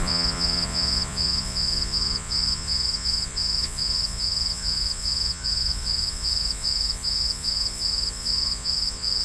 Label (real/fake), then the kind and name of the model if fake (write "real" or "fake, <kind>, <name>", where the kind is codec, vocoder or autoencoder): fake, vocoder, Vocos